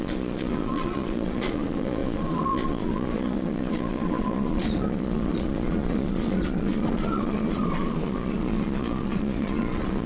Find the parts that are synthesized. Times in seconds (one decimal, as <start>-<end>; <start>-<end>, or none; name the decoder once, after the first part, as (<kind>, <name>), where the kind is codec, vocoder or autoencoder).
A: 0.0-10.1 (vocoder, Vocos)